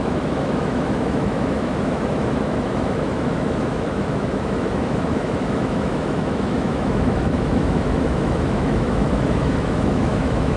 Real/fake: fake